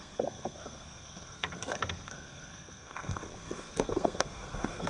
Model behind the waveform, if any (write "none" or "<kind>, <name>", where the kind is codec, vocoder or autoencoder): codec, SNAC